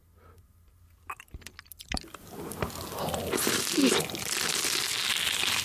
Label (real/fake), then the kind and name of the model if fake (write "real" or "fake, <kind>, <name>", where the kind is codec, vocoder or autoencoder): real